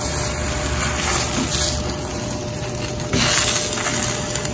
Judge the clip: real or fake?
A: real